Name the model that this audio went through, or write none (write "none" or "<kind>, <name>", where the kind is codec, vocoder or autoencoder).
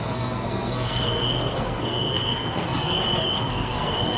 codec, SNAC